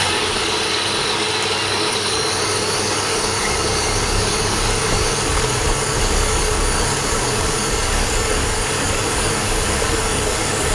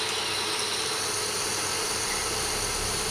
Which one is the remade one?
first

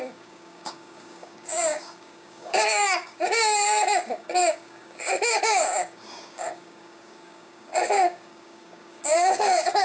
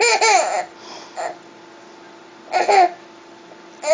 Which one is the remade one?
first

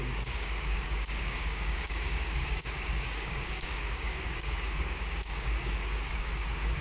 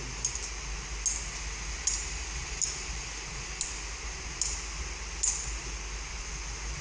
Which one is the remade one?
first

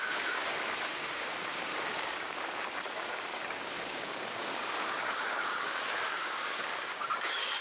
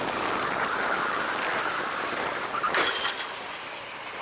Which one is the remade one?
first